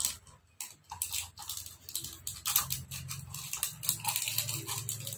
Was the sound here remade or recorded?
recorded